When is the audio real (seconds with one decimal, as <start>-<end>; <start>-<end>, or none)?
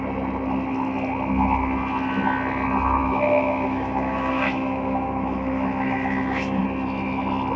0.0-3.0; 6.6-7.6